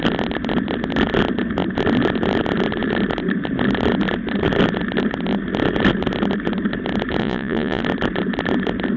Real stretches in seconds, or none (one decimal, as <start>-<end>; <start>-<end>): 0.0-7.2; 7.8-9.0